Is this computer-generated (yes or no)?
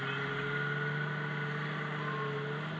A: no